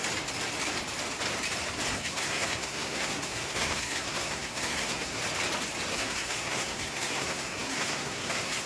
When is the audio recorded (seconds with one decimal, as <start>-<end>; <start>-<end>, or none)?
0.0-1.9; 5.2-5.9